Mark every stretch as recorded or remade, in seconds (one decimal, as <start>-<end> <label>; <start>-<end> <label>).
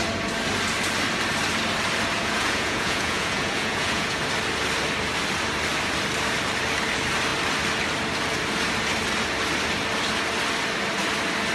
0.0-2.2 recorded; 2.2-4.2 remade; 4.2-11.5 recorded